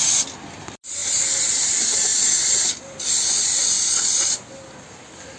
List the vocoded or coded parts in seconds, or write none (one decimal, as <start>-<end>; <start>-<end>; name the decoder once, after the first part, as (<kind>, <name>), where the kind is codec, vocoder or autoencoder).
none